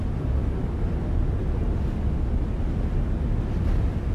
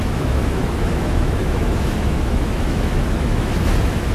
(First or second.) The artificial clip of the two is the second